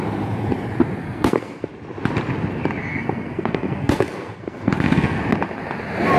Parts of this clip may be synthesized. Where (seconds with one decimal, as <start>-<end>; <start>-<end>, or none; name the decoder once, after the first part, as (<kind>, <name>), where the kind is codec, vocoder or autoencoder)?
1.0-1.7 (codec, SNAC); 2.9-5.2